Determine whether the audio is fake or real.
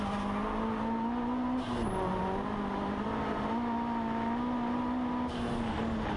real